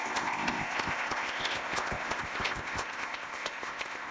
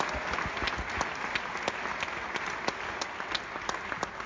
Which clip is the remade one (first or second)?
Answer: first